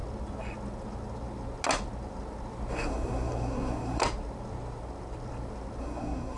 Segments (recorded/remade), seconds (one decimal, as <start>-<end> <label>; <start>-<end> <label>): 0.0-2.7 recorded; 2.7-4.0 remade; 4.0-5.8 recorded; 5.8-6.4 remade